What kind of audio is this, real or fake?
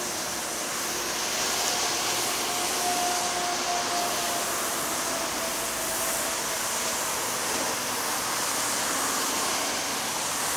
real